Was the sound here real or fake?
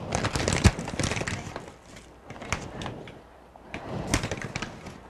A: fake